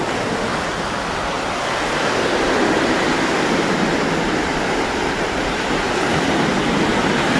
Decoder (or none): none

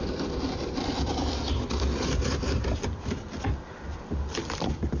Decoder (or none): vocoder, BigVGAN v2